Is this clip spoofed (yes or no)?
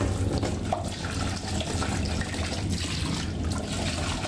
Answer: no